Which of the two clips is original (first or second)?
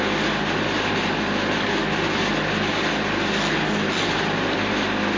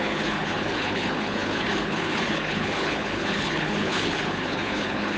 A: first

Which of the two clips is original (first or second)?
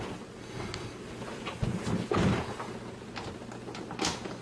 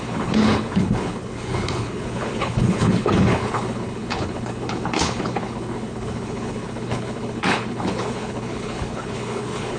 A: first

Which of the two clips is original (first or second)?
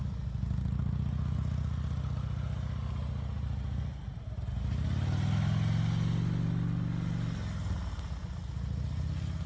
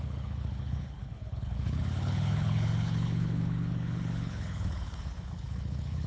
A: first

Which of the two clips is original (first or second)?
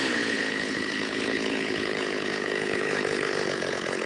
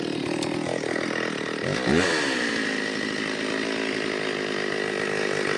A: second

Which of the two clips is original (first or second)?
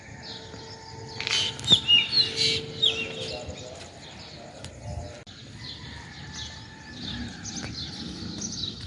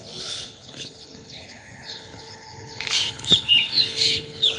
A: first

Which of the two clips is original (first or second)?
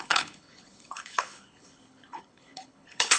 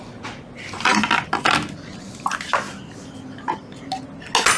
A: second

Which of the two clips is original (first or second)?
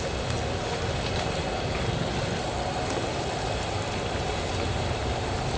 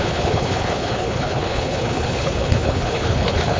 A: first